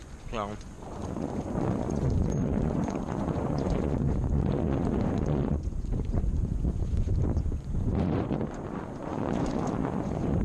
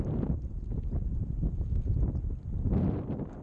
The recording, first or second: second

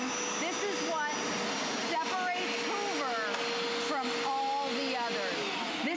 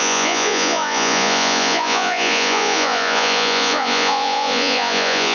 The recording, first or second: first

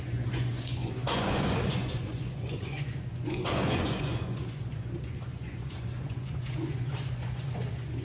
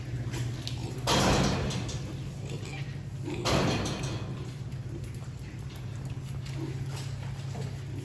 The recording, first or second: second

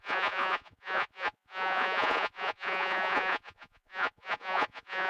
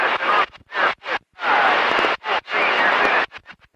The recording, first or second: second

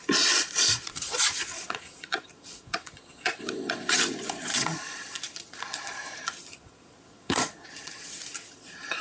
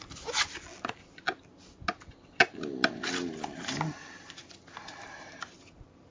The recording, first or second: second